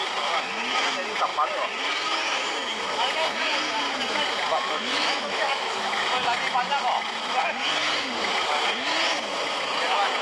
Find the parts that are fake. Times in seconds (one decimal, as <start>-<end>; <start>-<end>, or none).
4.5-6.0